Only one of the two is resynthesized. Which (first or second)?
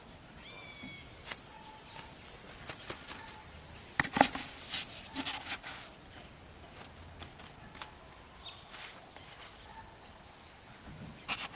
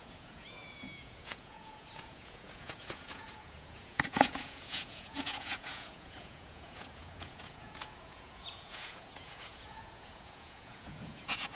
second